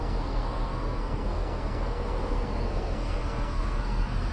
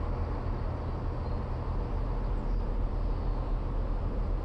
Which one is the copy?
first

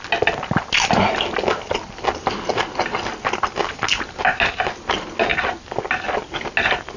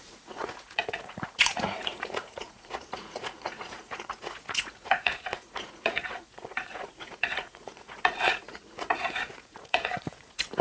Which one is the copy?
second